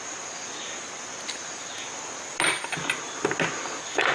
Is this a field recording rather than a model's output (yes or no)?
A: yes